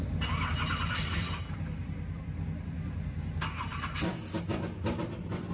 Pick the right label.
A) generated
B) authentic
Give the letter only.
B